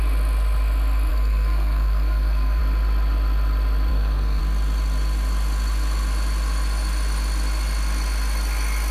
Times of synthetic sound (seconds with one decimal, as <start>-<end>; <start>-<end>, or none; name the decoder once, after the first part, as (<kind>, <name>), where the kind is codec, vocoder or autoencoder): 1.1-2.6 (codec, SNAC); 3.9-4.4